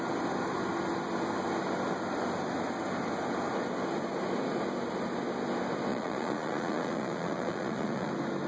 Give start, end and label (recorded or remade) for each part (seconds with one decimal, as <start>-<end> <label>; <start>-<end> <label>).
0.0-5.9 recorded; 5.9-8.1 remade; 8.1-8.5 recorded